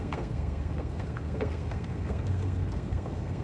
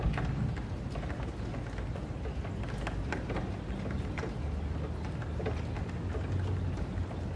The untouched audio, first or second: second